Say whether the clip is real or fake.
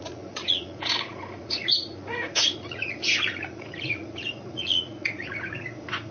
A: fake